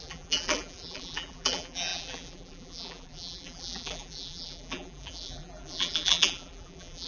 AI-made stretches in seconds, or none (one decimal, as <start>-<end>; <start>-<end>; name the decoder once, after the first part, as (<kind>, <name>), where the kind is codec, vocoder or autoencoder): 0.0-7.1 (vocoder, BigVGAN v2)